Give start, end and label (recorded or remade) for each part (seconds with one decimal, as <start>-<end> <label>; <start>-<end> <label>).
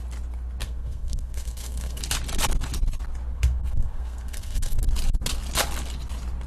0.0-0.6 recorded; 0.6-2.0 remade; 2.0-3.3 recorded; 3.3-4.8 remade; 4.8-6.5 recorded